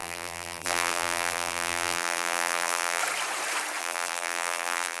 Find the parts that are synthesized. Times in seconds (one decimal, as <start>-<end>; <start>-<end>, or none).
0.0-3.0; 3.8-5.0